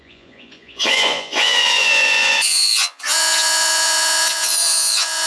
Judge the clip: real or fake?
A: fake